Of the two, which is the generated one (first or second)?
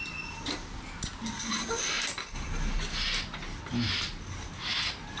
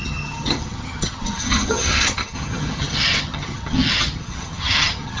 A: second